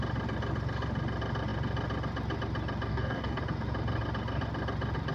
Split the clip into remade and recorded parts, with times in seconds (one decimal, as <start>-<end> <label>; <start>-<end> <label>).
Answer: 0.0-2.9 recorded; 2.9-3.4 remade; 3.4-5.1 recorded

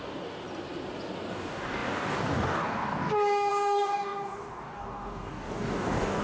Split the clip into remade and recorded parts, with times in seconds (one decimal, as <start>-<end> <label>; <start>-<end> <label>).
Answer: 0.0-0.4 remade; 0.4-1.3 recorded; 1.3-6.2 remade